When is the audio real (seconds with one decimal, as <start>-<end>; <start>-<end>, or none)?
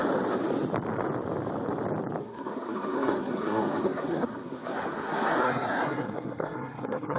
0.0-2.2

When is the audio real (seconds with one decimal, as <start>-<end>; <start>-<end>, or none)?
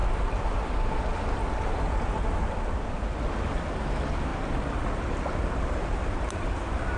0.0-7.0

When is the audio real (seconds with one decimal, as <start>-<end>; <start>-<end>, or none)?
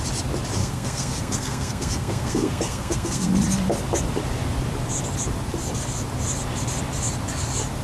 0.0-0.6; 3.3-7.8